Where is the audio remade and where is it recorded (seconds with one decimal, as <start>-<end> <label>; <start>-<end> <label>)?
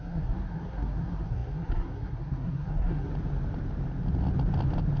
0.0-3.1 remade; 3.1-5.0 recorded